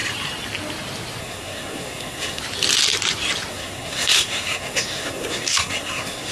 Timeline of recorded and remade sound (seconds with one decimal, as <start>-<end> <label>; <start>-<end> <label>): 0.0-1.2 recorded; 1.2-2.4 remade; 2.4-3.5 recorded; 3.5-6.3 remade

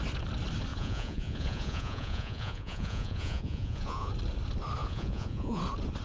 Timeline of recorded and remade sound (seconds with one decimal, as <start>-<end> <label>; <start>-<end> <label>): 0.0-0.7 recorded; 0.7-4.1 remade; 4.1-4.8 recorded; 4.8-5.6 remade; 5.6-6.0 recorded

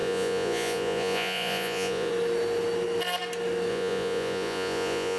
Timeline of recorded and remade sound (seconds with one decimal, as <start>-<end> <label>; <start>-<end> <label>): 0.0-2.1 remade; 2.1-3.7 recorded; 3.7-5.2 remade

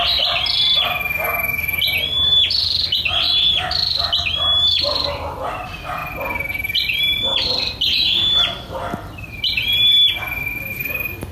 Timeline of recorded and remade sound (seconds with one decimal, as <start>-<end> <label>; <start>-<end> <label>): 0.0-11.3 remade

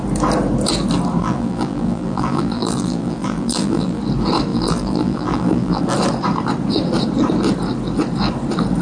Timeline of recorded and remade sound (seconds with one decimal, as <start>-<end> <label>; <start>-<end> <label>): 0.0-1.2 recorded; 1.2-4.0 remade; 4.0-4.5 recorded; 4.5-5.8 remade; 5.8-8.8 recorded

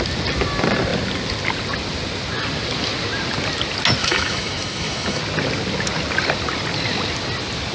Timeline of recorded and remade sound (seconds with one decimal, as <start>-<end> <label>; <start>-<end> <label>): 0.0-4.0 recorded; 4.0-5.2 remade; 5.2-7.7 recorded

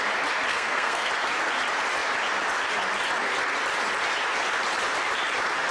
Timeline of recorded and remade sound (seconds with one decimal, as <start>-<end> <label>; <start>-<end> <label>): 0.0-0.5 recorded; 0.5-1.1 remade; 1.1-5.7 recorded